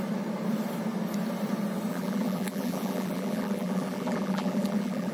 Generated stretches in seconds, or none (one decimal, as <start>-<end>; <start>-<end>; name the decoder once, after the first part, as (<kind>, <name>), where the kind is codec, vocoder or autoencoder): 1.9-5.1 (vocoder, BigVGAN v2)